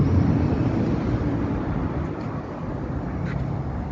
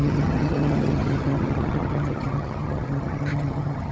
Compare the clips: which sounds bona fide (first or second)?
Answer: first